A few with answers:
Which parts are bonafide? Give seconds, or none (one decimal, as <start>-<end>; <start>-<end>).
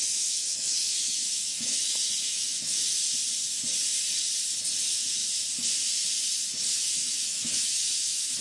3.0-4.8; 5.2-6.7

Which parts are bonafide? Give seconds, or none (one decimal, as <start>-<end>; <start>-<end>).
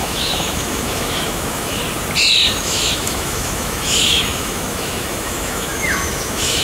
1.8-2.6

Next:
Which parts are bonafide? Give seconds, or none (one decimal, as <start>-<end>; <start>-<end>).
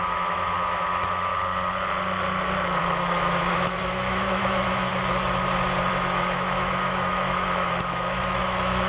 1.3-2.8; 4.9-5.9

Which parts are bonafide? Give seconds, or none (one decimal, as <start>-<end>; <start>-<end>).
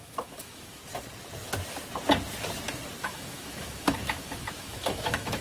0.8-3.0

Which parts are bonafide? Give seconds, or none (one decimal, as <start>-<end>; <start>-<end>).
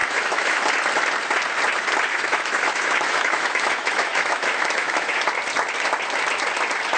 0.7-2.1; 5.2-7.0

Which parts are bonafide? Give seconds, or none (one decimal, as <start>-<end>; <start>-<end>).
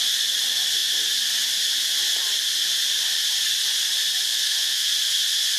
0.0-4.3; 4.9-5.6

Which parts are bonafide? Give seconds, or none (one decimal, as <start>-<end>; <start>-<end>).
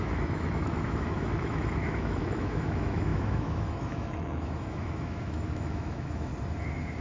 6.3-7.0